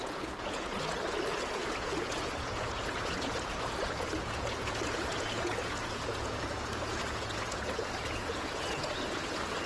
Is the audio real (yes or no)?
no